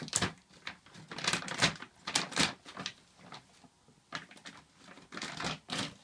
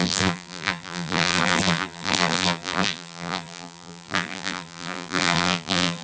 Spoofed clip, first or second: second